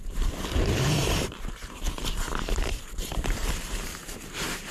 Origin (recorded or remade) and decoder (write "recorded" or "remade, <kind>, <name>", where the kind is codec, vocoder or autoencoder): remade, vocoder, BigVGAN v2